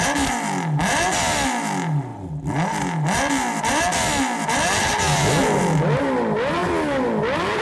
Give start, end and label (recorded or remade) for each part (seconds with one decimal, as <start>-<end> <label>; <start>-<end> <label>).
0.0-7.6 recorded